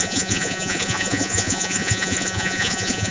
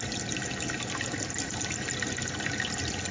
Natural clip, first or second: second